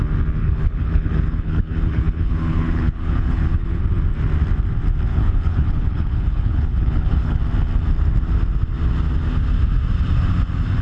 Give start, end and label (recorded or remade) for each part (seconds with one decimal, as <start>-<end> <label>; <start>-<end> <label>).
0.0-0.4 recorded; 0.4-3.8 remade; 3.8-5.1 recorded; 5.1-7.4 remade; 7.4-10.8 recorded